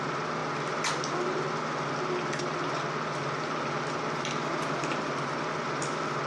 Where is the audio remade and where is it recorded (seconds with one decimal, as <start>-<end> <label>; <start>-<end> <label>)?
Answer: 0.0-6.3 recorded